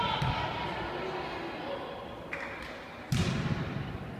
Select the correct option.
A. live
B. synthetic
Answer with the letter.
A